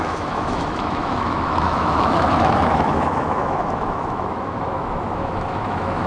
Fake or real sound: fake